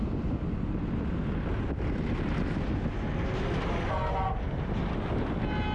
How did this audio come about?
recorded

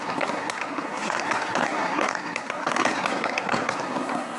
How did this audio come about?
remade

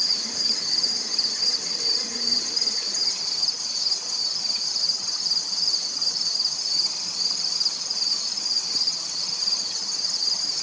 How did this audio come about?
remade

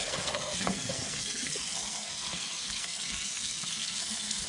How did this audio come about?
remade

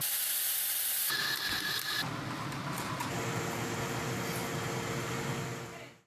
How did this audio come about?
recorded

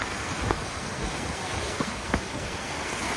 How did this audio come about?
remade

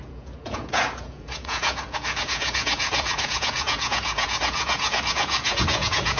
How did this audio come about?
remade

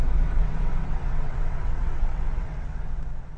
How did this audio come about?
remade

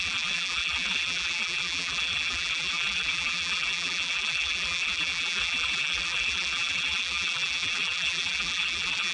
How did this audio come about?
remade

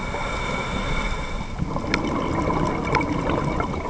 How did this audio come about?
recorded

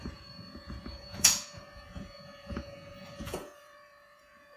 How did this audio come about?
remade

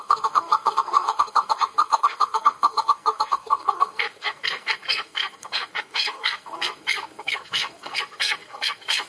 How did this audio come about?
remade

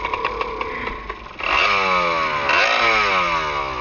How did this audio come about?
recorded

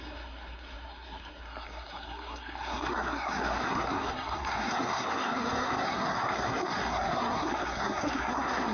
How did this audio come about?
remade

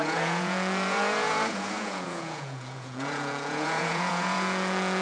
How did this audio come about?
remade